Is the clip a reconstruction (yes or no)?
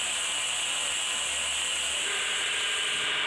no